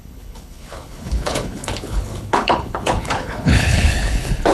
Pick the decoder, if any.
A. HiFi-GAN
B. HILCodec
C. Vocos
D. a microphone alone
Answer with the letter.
B